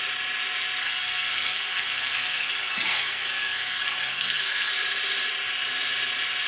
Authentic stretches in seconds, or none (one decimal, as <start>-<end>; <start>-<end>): 0.0-0.8; 4.7-6.5